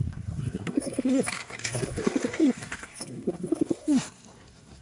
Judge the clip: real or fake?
fake